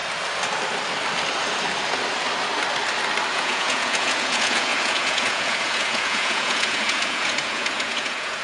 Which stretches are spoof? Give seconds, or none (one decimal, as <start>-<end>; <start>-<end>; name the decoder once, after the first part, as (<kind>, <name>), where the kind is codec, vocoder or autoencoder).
3.3-8.4 (vocoder, Vocos)